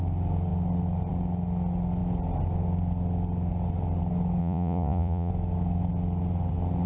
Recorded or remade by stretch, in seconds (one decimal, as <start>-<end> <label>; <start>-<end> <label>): 0.0-4.4 recorded; 4.4-5.3 remade; 5.3-6.9 recorded